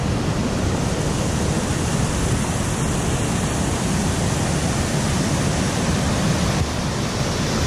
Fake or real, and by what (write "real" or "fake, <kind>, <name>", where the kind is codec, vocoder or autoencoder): real